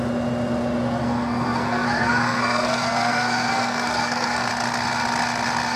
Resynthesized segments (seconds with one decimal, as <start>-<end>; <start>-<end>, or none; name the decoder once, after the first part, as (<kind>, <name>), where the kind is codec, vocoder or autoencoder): 1.0-4.5 (codec, SNAC)